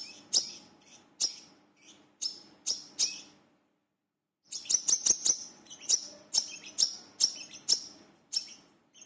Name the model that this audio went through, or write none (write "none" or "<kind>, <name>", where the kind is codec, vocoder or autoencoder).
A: none